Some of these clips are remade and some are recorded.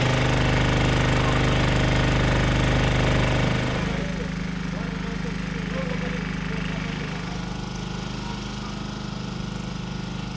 recorded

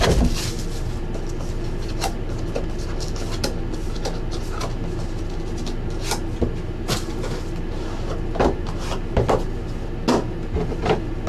recorded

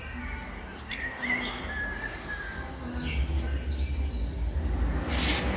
recorded